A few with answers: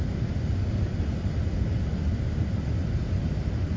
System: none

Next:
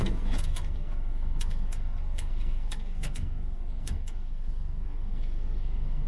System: codec, SNAC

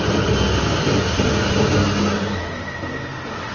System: none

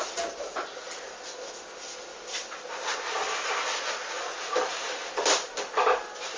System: none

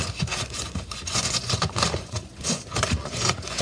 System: vocoder, Vocos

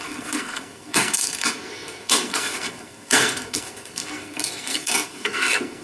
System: codec, SNAC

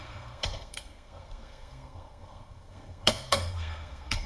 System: codec, SNAC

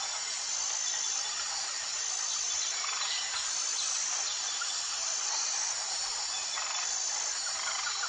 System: none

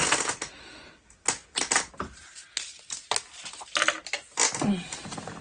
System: none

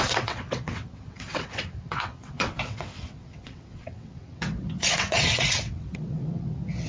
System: vocoder, WaveNeXt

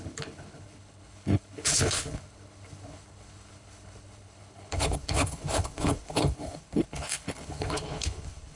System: codec, HILCodec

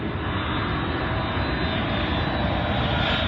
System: none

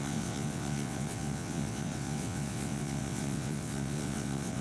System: vocoder, WaveNeXt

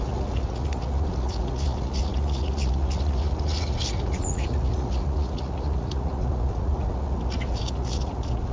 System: vocoder, Vocos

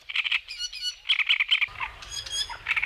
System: none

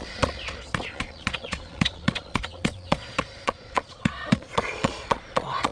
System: vocoder, Vocos